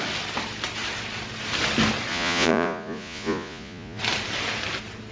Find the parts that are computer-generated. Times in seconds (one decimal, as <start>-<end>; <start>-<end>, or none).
2.1-4.0